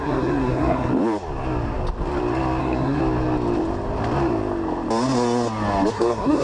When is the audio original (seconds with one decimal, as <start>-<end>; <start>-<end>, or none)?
0.9-2.6; 3.0-5.9